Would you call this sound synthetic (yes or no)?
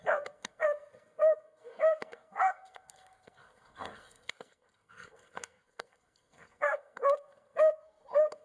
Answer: yes